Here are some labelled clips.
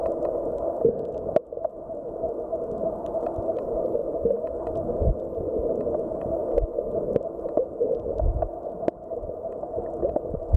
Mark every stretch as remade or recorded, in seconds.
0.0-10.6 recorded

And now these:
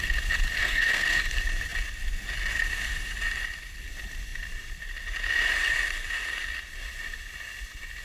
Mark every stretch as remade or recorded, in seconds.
0.0-0.6 recorded; 0.6-1.2 remade; 1.2-8.0 recorded

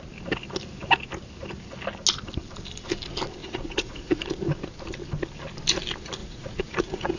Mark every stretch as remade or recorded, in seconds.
0.0-3.4 recorded; 3.4-4.2 remade; 4.2-6.2 recorded; 6.2-7.2 remade

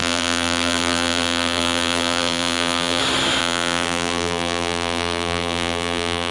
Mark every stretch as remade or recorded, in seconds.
0.0-3.0 remade; 3.0-3.4 recorded; 3.4-6.3 remade

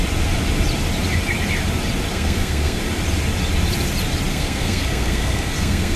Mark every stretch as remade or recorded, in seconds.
0.0-2.1 recorded; 2.1-2.8 remade; 2.8-4.3 recorded; 4.3-6.0 remade

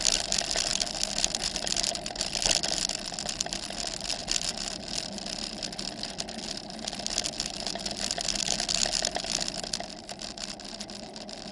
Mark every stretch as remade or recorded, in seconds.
0.0-11.5 recorded

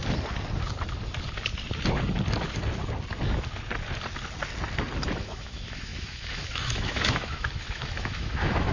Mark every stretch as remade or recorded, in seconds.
0.0-5.2 recorded; 5.2-8.7 remade